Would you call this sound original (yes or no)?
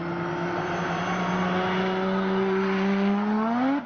yes